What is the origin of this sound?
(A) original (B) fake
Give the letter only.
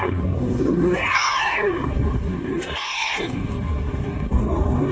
B